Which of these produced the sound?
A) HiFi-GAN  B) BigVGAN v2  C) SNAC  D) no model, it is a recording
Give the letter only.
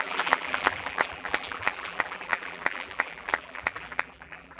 B